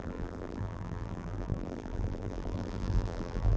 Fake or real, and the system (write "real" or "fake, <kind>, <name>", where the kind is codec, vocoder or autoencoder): fake, vocoder, BigVGAN v2